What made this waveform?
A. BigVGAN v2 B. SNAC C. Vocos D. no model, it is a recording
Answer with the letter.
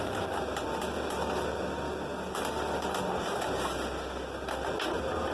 D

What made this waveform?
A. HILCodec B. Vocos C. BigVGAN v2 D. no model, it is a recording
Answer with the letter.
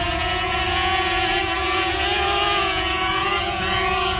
B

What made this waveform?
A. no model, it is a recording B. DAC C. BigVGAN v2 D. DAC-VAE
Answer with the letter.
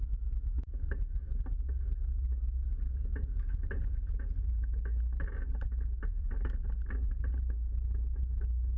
A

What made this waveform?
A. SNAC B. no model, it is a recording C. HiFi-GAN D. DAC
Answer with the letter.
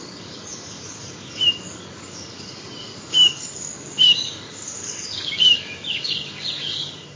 D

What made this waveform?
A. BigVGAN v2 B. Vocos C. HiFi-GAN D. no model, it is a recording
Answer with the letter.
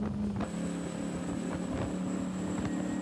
D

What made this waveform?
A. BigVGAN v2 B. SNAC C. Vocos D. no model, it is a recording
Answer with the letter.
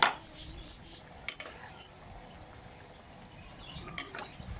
D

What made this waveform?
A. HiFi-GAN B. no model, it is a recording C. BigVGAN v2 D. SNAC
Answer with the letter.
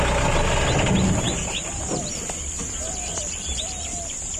B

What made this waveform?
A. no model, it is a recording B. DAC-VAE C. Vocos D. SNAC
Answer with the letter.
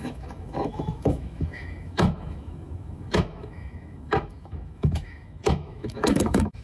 B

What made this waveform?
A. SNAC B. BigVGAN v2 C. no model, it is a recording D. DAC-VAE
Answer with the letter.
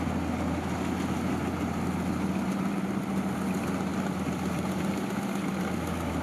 C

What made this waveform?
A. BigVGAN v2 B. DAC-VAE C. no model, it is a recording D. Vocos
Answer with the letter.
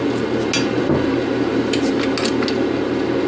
C